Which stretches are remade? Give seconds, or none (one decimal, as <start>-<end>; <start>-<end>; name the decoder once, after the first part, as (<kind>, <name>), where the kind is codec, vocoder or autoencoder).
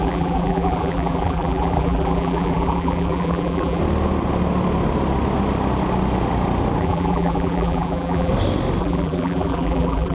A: 0.0-3.8 (vocoder, BigVGAN v2); 6.8-8.3; 8.8-10.1